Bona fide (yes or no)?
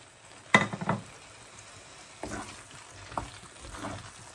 yes